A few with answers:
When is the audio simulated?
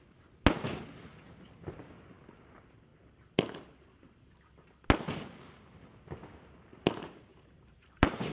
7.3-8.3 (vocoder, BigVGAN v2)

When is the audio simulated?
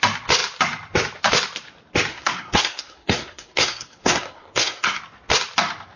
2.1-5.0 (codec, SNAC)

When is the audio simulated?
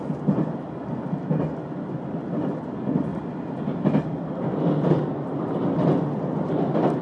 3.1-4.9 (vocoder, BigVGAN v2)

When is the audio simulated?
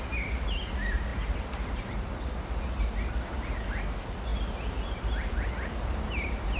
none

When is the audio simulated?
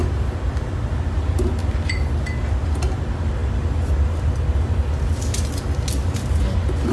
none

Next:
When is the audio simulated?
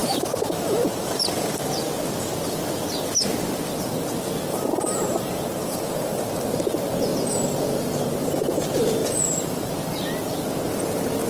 0.0-1.6 (vocoder, BigVGAN v2); 4.5-6.2; 9.0-9.7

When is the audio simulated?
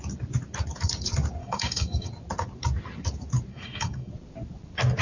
1.4-2.1 (codec, DAC); 3.5-4.1